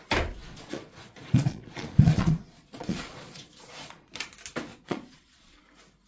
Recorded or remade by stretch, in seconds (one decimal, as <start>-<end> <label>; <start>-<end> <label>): 0.0-0.4 recorded; 0.4-4.1 remade; 4.1-4.7 recorded; 4.7-5.6 remade; 5.6-6.1 recorded